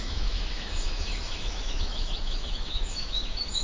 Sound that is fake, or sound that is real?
fake